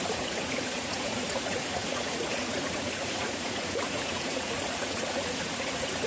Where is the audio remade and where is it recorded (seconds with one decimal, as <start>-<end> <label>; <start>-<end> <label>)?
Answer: 0.0-6.1 remade